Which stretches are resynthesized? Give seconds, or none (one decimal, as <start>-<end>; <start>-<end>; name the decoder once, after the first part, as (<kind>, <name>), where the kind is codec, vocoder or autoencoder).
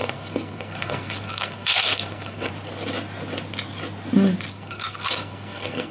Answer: 0.0-2.5 (codec, SNAC); 4.5-5.9